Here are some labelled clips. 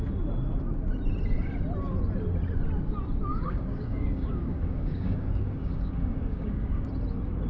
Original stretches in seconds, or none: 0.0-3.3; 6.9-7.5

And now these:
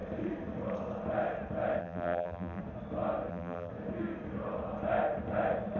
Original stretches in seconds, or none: 0.0-1.8; 2.6-3.3; 3.7-5.8

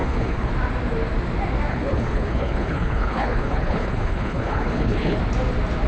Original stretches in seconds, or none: 0.5-1.7; 5.2-5.9